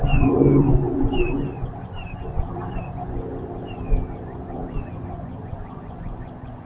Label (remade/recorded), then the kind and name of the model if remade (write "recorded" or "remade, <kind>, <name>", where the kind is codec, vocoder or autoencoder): remade, vocoder, Vocos